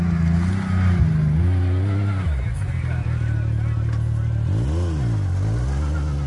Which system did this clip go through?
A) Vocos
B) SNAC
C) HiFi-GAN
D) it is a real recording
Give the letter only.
D